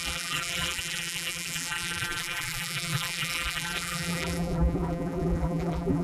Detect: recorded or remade remade